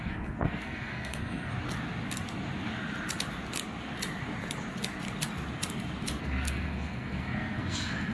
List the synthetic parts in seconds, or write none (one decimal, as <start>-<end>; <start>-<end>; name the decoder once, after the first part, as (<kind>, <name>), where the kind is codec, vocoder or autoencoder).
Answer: 0.0-1.5 (codec, SNAC); 6.2-8.1